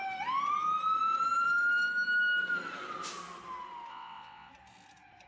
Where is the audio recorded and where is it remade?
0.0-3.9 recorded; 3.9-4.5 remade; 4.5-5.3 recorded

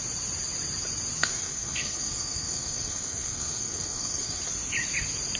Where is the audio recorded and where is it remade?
0.0-1.2 recorded; 1.2-4.4 remade; 4.4-5.4 recorded

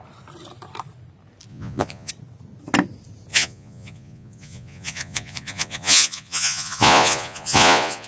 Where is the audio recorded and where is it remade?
0.0-1.5 recorded; 1.5-2.1 remade; 2.1-3.3 recorded; 3.3-8.1 remade

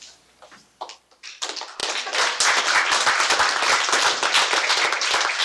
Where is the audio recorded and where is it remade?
0.0-5.4 recorded

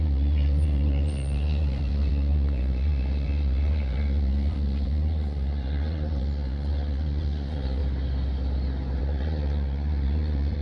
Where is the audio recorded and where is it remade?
0.0-7.8 remade; 7.8-9.0 recorded; 9.0-10.6 remade

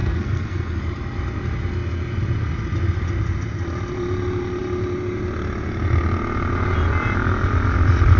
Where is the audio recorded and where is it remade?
0.0-0.8 remade; 0.8-8.2 recorded

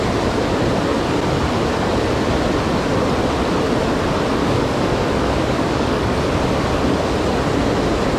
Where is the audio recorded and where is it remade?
0.0-4.4 recorded; 4.4-6.2 remade; 6.2-8.2 recorded